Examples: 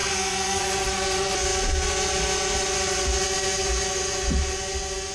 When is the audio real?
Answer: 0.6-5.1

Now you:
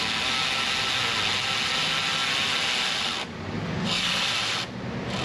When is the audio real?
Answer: 0.0-3.2; 4.2-5.2

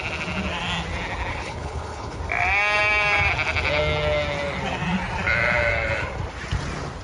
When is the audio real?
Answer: 0.0-1.3; 2.2-7.0